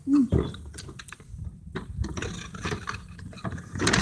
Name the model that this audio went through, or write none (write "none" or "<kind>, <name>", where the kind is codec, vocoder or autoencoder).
none